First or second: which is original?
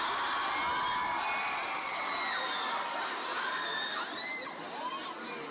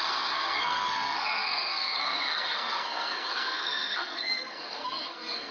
first